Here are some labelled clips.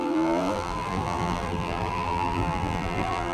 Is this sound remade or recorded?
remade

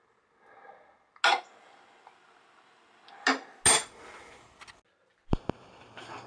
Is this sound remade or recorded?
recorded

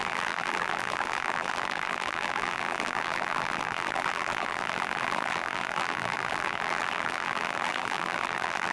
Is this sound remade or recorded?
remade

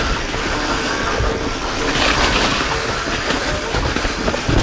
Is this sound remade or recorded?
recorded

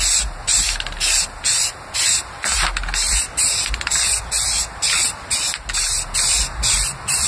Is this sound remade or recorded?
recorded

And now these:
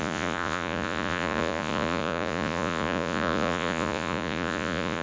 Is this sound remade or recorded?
remade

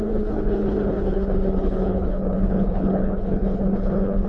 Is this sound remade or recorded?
remade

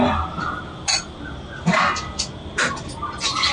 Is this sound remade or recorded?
recorded